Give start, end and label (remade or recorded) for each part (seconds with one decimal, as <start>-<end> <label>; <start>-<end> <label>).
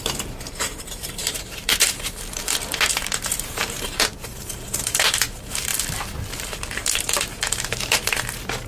0.0-5.7 remade; 5.7-6.5 recorded; 6.5-8.7 remade